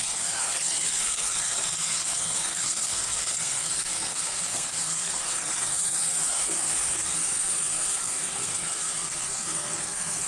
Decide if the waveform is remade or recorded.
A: remade